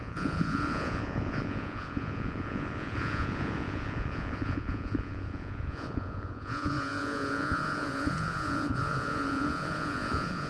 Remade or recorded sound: remade